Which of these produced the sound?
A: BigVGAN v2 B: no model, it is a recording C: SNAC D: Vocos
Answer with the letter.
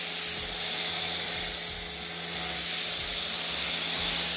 B